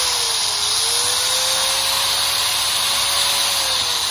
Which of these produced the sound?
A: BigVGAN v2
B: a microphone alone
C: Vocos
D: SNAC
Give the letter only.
B